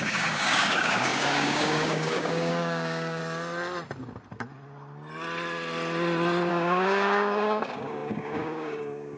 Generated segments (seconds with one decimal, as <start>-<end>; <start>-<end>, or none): 0.0-3.2; 6.5-9.2

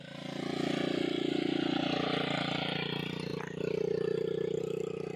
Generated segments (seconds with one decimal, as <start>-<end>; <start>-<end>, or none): none

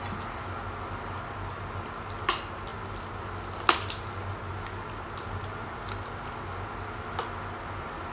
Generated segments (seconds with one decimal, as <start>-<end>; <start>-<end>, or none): none

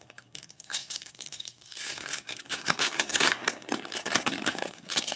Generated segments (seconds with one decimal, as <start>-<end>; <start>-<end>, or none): 0.0-5.2

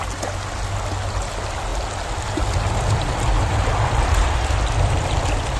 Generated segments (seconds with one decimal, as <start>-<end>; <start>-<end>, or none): none

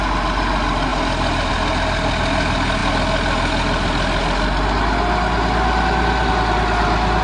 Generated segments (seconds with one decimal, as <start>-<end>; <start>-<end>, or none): none